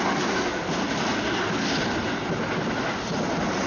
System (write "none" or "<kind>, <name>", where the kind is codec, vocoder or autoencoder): none